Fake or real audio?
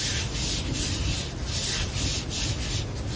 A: real